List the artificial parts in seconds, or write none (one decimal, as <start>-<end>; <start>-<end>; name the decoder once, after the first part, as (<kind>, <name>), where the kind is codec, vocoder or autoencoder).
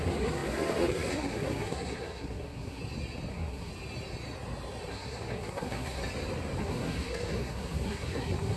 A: 0.0-2.8 (codec, SNAC); 3.3-3.7; 4.9-6.0; 6.6-8.6